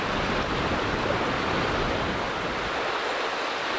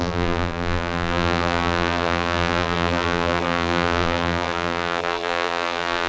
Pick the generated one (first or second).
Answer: second